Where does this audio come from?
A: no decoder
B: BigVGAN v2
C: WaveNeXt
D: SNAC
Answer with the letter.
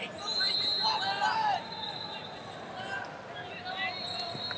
A